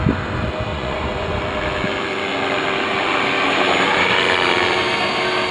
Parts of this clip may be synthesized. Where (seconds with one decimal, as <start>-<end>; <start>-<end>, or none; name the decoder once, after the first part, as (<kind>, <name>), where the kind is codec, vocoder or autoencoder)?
0.7-1.4 (vocoder, Vocos)